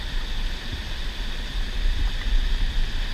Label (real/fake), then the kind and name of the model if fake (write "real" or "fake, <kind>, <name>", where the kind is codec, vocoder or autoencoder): real